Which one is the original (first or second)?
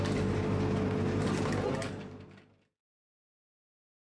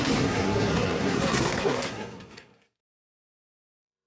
first